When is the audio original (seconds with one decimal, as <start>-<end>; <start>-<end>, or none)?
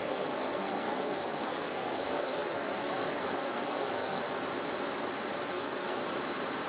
4.2-5.5; 6.0-6.7